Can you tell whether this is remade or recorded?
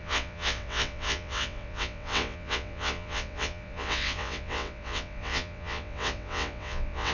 remade